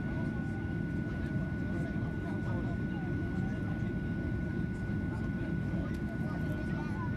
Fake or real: real